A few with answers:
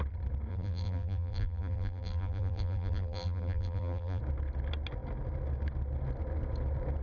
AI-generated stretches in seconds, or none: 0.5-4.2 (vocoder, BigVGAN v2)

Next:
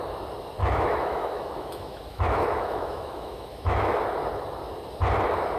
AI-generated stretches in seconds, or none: 0.6-4.0 (autoencoder, DAC-VAE)

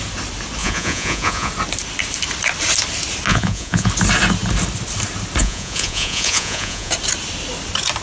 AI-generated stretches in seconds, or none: 0.6-1.5 (vocoder, Vocos); 3.3-3.9; 5.4-6.9

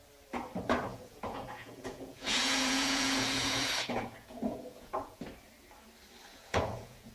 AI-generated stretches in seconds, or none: 0.9-5.2 (vocoder, Vocos); 6.3-7.1

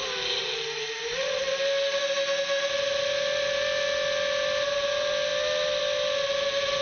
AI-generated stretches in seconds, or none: 2.0-2.7 (autoencoder, DAC-VAE)